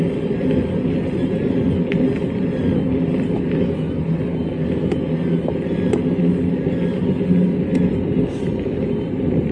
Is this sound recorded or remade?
recorded